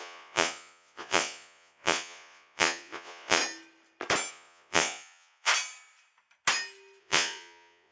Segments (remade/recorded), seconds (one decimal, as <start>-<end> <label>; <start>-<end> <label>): 0.0-3.4 remade; 3.4-4.3 recorded; 4.3-5.5 remade; 5.5-7.0 recorded; 7.0-7.9 remade